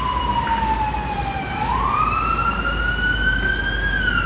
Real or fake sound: real